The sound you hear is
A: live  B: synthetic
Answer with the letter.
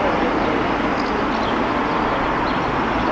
A